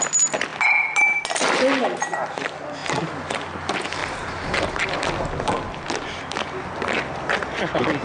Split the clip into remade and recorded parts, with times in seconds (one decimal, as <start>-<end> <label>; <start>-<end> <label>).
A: 0.0-8.0 recorded